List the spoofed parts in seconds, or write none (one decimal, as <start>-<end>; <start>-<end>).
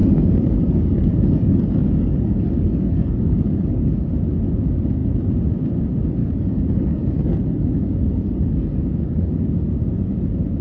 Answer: 0.0-4.1; 6.2-9.5